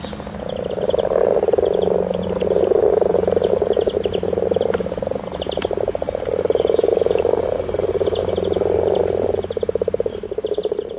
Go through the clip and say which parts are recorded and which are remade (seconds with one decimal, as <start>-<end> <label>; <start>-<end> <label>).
0.0-11.0 recorded